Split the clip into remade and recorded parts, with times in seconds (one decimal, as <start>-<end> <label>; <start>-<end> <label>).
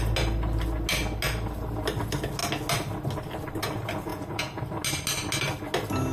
0.0-4.1 recorded; 4.1-4.6 remade; 4.6-6.1 recorded